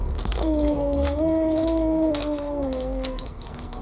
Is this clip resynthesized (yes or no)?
yes